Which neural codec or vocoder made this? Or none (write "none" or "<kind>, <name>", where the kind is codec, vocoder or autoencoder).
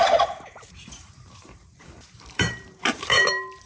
vocoder, BigVGAN v2